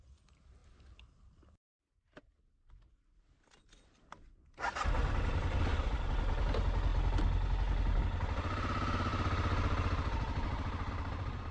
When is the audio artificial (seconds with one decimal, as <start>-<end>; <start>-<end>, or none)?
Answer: none